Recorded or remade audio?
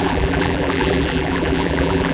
remade